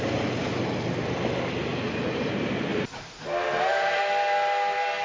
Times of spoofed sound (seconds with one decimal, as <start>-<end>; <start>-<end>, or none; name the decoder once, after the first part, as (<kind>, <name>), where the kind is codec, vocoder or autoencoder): 2.7-4.0 (vocoder, BigVGAN v2)